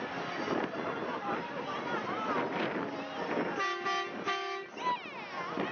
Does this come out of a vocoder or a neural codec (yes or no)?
no